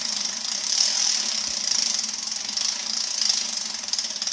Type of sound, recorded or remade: recorded